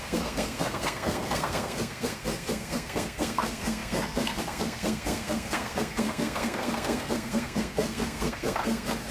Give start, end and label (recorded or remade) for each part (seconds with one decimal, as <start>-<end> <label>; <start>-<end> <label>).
0.0-9.1 remade